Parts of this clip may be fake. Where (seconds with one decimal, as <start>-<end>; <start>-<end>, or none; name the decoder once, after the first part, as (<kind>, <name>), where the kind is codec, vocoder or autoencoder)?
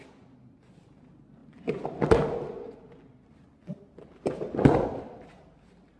none